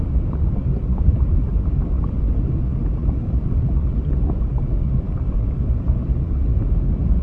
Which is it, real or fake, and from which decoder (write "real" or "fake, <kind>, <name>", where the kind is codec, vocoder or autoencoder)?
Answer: real